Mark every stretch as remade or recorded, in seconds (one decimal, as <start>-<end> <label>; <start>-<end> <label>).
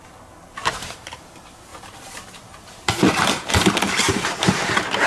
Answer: 0.0-0.6 recorded; 0.6-1.2 remade; 1.2-1.7 recorded; 1.7-5.1 remade